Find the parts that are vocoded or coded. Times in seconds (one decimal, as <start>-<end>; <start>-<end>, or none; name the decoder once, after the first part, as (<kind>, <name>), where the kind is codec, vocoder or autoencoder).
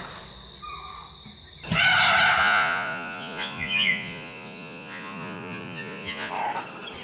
2.4-6.3 (vocoder, Vocos)